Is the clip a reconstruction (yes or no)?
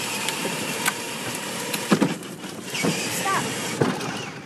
yes